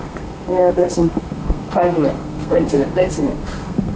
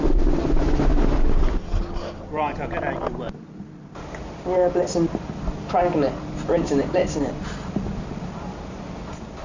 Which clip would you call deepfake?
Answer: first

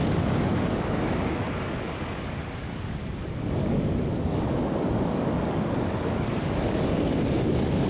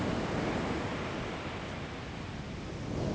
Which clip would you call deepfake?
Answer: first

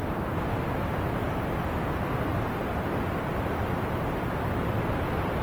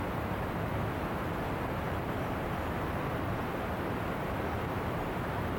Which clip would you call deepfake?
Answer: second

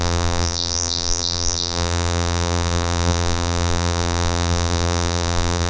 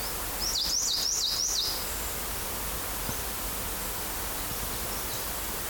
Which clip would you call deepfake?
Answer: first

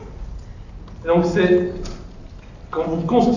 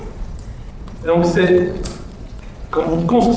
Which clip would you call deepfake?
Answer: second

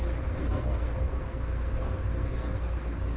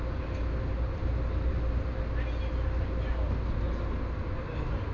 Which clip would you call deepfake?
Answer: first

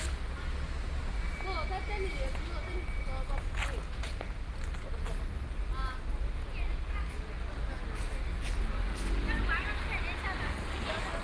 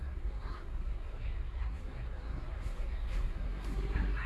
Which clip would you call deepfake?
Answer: second